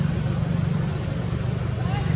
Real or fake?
real